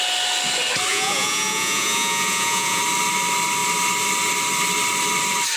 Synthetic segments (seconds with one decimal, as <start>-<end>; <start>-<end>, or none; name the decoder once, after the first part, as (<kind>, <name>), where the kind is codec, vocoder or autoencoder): 0.9-2.8 (vocoder, Vocos)